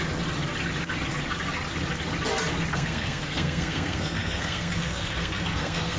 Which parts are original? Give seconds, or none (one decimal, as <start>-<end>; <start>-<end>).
0.0-2.7